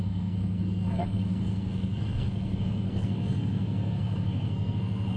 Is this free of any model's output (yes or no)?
no